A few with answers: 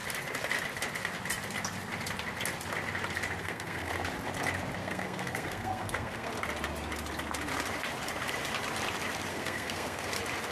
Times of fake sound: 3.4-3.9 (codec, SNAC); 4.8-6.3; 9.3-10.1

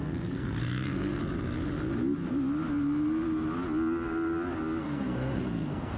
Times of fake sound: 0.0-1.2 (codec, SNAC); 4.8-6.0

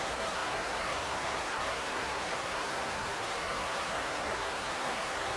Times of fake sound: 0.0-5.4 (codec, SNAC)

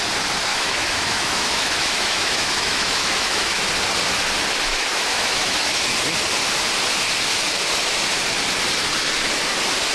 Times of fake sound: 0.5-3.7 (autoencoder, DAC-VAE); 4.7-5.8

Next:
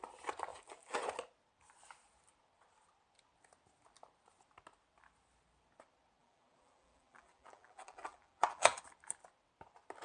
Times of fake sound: 0.5-1.0 (vocoder, BigVGAN v2); 6.2-8.8

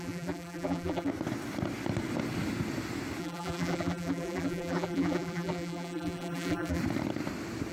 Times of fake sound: 0.0-1.1 (vocoder, BigVGAN v2); 3.2-6.8

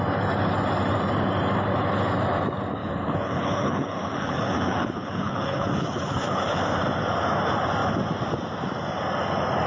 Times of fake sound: 2.8-6.6 (codec, HILCodec)